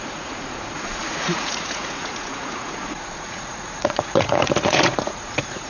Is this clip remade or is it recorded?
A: remade